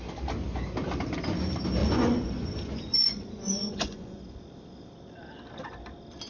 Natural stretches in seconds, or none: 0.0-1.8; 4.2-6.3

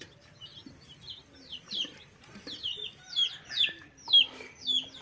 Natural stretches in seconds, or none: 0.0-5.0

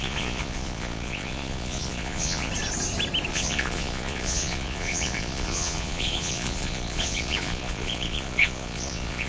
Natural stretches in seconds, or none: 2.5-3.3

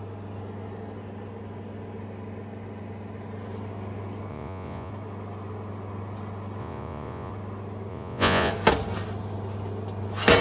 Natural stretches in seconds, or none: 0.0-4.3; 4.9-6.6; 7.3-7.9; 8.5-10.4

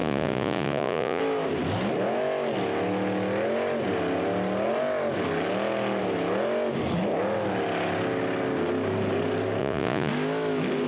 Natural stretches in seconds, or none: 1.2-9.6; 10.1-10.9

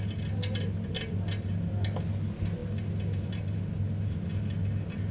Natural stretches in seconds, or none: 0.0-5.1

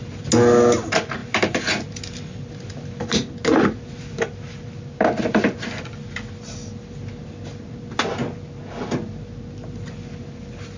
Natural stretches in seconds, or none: 0.0-10.8

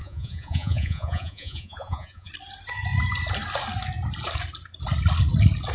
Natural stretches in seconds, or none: 2.3-5.7